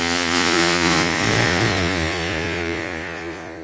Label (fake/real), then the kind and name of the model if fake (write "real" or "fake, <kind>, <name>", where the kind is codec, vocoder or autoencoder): fake, vocoder, Vocos